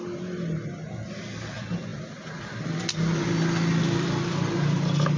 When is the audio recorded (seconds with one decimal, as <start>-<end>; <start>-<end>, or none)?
0.0-5.2